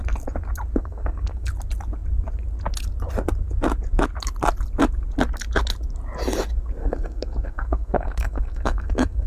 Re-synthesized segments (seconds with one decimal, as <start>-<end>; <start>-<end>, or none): 0.8-1.5; 6.8-9.3

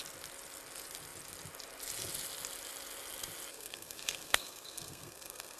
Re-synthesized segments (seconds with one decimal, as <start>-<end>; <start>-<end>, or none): 3.5-5.6